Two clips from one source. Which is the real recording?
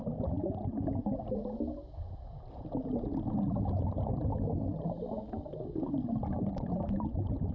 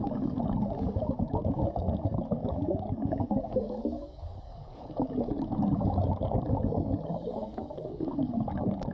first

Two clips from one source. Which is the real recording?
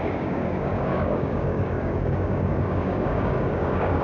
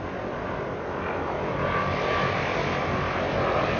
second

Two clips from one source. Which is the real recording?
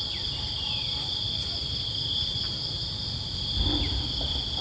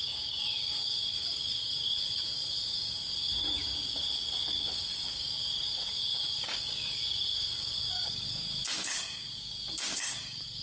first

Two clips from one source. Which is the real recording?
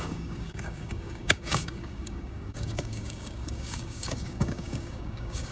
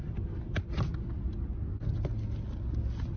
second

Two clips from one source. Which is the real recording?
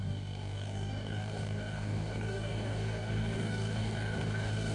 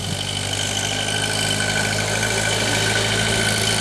second